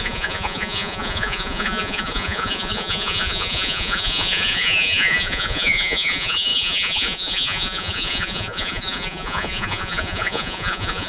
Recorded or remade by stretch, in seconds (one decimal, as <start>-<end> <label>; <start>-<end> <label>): 0.0-11.1 remade